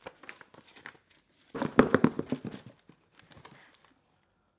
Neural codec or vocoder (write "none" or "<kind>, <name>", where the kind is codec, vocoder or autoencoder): none